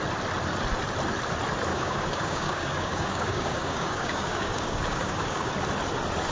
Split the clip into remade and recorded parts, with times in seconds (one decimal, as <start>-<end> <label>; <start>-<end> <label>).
0.0-1.7 recorded; 1.7-5.5 remade; 5.5-6.3 recorded